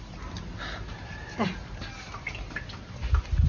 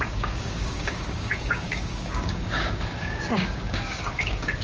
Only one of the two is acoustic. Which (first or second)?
first